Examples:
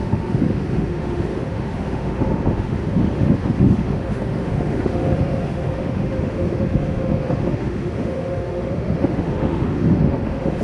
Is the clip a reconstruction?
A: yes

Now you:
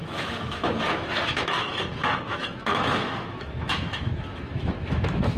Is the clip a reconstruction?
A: yes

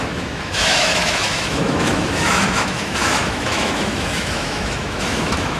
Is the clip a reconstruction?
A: yes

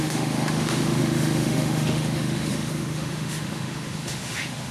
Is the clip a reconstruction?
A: yes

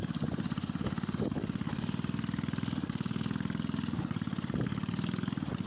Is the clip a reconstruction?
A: no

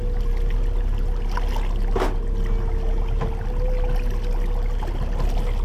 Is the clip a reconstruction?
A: no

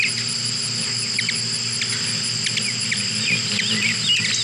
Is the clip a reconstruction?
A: no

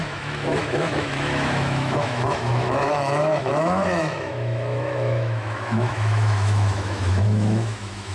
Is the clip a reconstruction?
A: yes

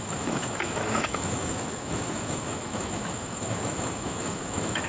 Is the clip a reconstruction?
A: yes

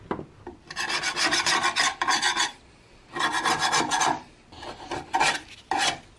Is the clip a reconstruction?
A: no